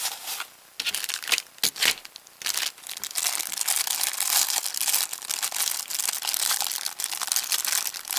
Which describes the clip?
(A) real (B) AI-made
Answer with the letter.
A